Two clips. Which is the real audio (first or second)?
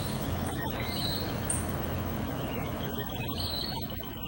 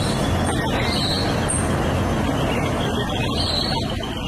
second